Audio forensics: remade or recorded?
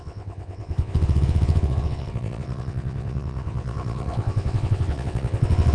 remade